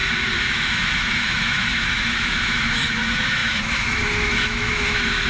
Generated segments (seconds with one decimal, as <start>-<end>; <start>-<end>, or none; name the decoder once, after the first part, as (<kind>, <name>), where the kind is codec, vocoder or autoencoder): 0.5-5.3 (autoencoder, DAC-VAE)